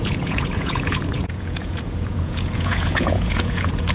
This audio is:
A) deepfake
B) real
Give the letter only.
A